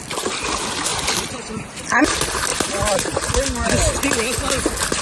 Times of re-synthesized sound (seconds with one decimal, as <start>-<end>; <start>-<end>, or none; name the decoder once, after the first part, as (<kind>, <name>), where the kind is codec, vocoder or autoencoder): 0.9-2.0 (vocoder, BigVGAN v2); 2.5-3.3